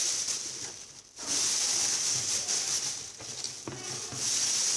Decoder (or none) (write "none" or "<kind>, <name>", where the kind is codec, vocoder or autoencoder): none